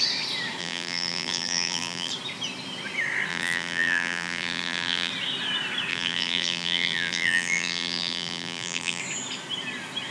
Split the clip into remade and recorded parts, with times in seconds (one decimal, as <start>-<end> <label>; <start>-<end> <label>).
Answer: 0.0-0.6 recorded; 0.6-2.1 remade; 2.1-3.3 recorded; 3.3-5.1 remade; 5.1-5.9 recorded; 5.9-9.0 remade; 9.0-10.1 recorded